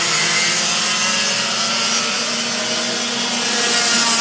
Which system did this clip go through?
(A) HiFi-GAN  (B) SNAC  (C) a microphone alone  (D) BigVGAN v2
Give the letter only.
C